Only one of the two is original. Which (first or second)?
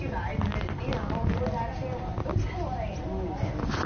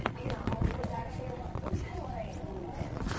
first